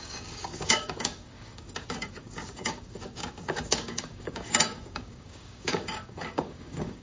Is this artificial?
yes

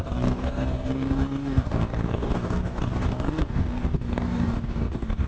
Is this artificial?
yes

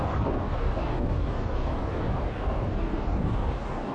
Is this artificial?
yes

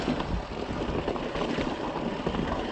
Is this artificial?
no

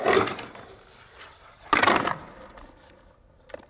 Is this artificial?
no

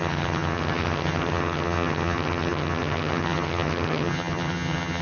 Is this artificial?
yes